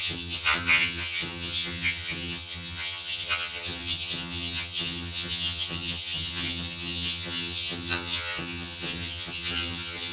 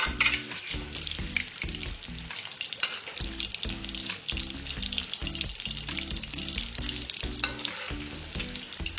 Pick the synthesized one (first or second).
first